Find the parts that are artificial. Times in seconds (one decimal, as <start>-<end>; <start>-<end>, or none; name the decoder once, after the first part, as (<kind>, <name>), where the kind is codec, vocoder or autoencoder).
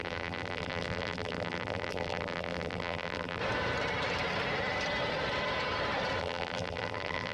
0.0-3.4 (vocoder, BigVGAN v2); 6.2-7.3